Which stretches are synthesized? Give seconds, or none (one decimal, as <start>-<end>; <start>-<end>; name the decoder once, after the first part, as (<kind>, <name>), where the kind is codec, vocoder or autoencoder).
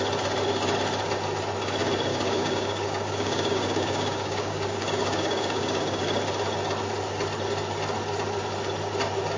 2.1-6.0 (codec, DAC)